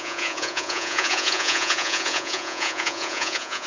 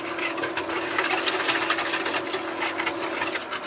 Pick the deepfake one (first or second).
first